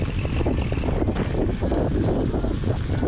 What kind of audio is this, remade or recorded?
remade